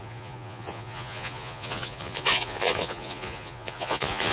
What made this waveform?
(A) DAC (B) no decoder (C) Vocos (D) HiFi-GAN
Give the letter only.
C